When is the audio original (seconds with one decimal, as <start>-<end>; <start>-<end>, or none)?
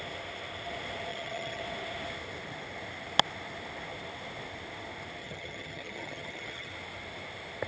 0.0-1.1; 1.6-5.2; 6.7-7.7